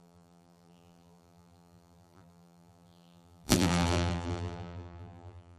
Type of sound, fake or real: fake